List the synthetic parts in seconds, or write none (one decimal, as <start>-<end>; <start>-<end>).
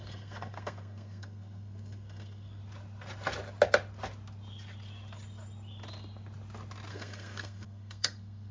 0.0-2.6; 6.9-8.5